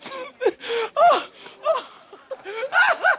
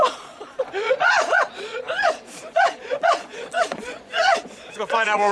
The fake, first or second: second